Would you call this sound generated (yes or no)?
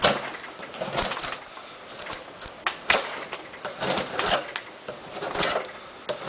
no